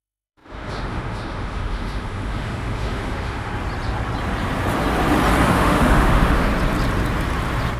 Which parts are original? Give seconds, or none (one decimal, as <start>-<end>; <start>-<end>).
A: 3.5-5.5; 6.5-7.8